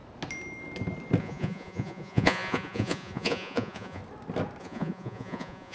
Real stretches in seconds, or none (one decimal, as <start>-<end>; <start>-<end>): 0.0-1.2; 4.0-4.6